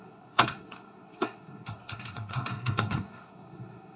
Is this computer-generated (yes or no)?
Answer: yes